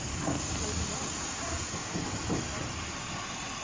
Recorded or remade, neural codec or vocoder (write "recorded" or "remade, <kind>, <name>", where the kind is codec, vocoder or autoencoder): recorded